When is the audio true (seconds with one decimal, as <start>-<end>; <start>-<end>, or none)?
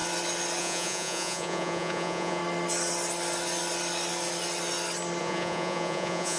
0.0-0.6; 2.4-5.2